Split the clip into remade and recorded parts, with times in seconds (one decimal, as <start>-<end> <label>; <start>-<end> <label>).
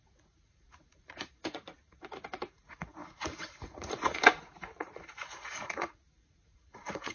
0.0-7.1 remade